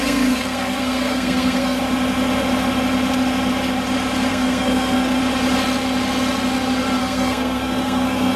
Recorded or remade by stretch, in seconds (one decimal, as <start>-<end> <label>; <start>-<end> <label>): 0.0-1.8 remade; 1.8-4.3 recorded; 4.3-5.2 remade; 5.2-7.0 recorded; 7.0-8.4 remade